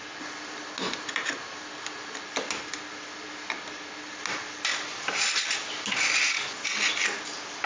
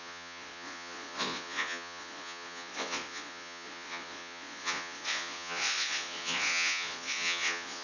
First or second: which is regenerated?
second